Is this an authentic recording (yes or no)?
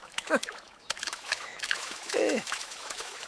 no